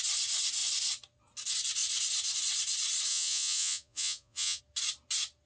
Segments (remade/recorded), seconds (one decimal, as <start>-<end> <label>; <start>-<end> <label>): 0.0-3.1 recorded; 3.1-4.6 remade; 4.6-5.5 recorded